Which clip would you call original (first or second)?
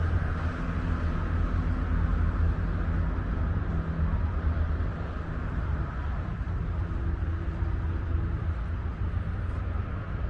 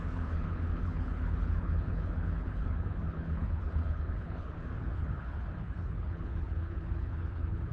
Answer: first